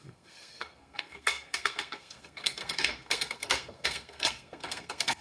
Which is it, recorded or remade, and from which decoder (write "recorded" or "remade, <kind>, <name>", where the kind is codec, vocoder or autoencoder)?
remade, codec, SNAC